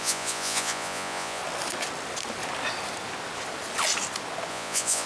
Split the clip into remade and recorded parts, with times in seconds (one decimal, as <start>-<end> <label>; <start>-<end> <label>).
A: 0.0-1.4 remade; 1.4-4.5 recorded; 4.5-5.1 remade